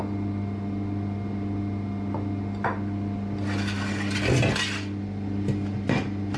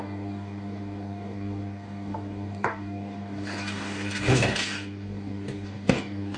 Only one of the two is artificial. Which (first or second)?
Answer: second